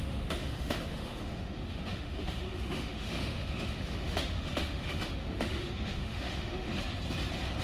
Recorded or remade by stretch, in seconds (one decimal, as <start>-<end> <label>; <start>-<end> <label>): 0.0-6.7 remade; 6.7-7.6 recorded